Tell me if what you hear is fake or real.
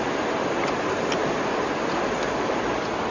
real